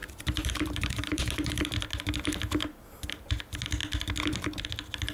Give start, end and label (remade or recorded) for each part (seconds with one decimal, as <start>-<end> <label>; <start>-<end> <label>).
0.0-1.6 remade; 1.6-5.1 recorded